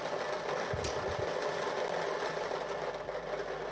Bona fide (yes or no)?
yes